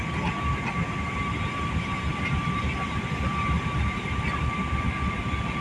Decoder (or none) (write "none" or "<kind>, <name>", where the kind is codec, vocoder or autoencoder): none